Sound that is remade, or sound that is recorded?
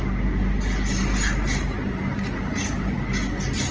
recorded